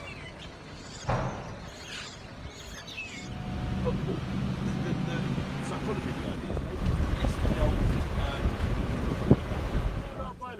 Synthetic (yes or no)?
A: no